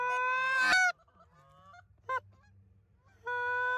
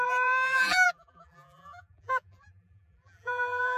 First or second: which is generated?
second